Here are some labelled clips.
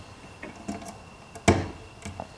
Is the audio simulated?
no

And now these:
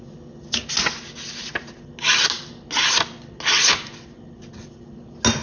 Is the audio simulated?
no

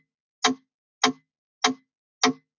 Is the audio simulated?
no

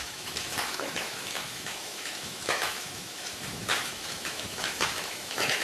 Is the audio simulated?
yes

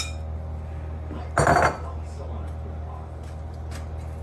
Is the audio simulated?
no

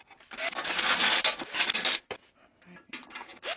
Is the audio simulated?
no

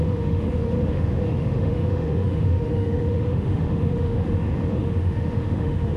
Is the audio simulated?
yes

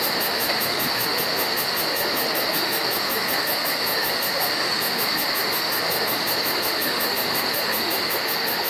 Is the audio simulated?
yes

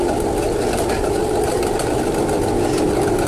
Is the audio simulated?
no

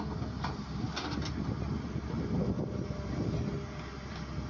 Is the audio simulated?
no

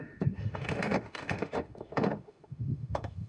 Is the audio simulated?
yes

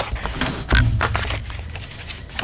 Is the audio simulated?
no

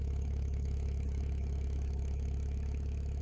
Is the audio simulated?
yes